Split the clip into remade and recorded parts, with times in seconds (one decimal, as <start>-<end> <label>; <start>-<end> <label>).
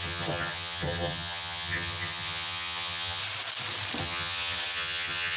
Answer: 0.0-3.2 remade; 3.2-4.0 recorded; 4.0-5.4 remade